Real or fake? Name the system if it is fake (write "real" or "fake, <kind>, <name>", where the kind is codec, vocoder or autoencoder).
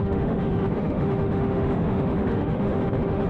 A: fake, autoencoder, DAC-VAE